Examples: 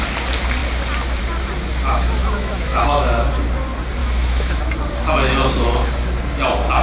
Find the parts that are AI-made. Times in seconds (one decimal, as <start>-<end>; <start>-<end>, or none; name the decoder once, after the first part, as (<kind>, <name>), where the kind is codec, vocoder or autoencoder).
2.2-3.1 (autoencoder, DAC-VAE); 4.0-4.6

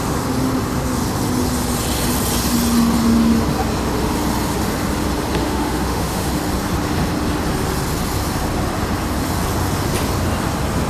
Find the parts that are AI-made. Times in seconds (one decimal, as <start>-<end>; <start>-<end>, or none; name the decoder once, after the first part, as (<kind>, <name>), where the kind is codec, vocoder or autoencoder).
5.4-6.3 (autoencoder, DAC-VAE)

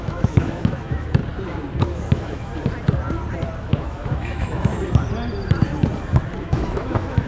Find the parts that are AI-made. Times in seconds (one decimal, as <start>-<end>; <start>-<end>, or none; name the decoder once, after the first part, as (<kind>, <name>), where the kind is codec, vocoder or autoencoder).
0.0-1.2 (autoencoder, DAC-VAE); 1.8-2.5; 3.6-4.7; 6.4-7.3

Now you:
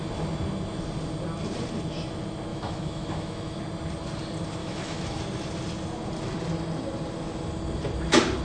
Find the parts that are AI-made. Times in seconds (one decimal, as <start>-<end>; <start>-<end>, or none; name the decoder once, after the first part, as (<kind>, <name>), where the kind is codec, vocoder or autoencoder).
2.5-3.6 (autoencoder, DAC-VAE); 4.6-5.2

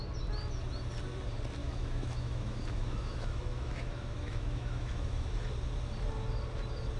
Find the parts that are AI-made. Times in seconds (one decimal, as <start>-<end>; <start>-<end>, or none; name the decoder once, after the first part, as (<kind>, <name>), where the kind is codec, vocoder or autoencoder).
1.6-5.5 (autoencoder, DAC-VAE)

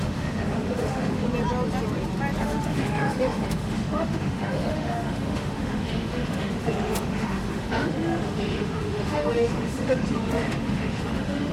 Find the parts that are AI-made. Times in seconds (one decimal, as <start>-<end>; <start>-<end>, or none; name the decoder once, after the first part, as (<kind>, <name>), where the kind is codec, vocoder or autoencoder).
0.0-1.3 (autoencoder, DAC-VAE); 2.4-11.5